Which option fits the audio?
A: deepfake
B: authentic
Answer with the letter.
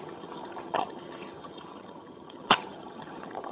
A